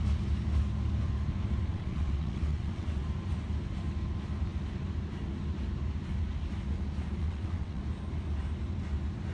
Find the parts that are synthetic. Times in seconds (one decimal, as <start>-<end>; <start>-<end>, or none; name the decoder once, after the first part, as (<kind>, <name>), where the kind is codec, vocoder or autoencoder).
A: 1.7-3.0 (vocoder, WaveNeXt); 7.2-7.8